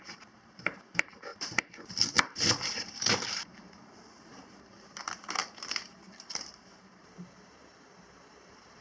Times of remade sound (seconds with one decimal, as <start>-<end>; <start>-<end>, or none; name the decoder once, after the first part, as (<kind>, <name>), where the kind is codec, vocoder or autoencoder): 0.0-5.4 (vocoder, BigVGAN v2); 6.2-7.2; 8.3-8.8